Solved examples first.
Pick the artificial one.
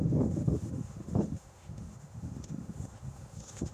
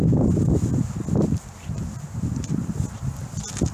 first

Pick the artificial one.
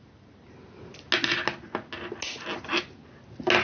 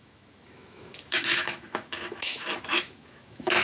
second